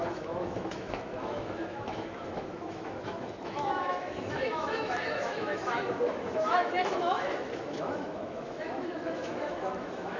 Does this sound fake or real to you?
fake